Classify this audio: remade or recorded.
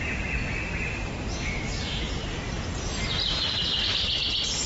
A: recorded